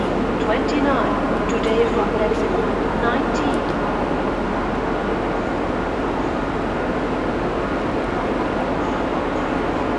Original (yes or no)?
yes